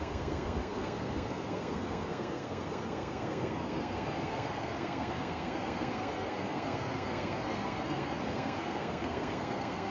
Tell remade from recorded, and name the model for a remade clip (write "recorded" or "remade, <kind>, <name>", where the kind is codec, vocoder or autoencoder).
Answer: remade, codec, SNAC